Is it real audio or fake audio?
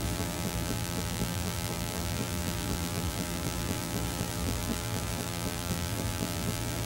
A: fake